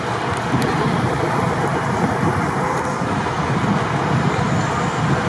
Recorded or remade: recorded